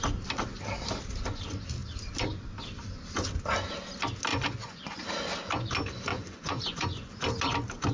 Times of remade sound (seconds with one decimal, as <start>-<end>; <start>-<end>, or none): 4.3-5.0; 6.1-7.1